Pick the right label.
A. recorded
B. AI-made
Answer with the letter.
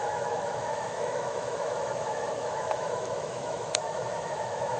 B